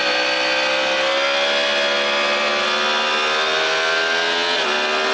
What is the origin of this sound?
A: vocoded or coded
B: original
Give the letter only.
B